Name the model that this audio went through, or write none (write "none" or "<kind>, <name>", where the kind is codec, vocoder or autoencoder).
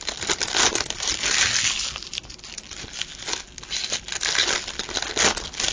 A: none